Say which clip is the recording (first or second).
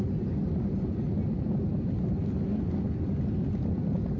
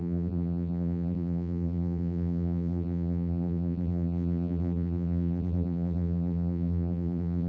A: first